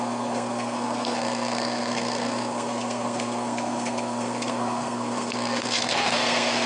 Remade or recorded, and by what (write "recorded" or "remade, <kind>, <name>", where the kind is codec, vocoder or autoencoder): remade, codec, SNAC